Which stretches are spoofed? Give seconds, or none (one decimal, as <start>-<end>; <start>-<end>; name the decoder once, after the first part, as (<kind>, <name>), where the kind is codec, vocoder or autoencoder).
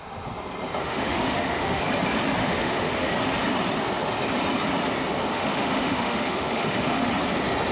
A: 0.8-1.8 (autoencoder, DAC-VAE); 2.4-3.1; 5.3-7.1